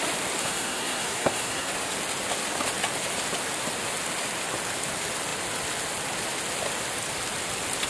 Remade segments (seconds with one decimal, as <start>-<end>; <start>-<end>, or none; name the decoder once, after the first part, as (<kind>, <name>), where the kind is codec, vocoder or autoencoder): 0.4-1.7 (codec, SNAC)